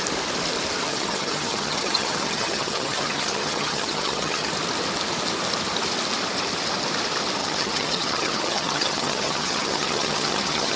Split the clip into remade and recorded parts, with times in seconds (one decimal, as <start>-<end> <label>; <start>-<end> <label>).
0.0-0.9 recorded; 0.9-4.5 remade; 4.5-7.4 recorded; 7.4-10.8 remade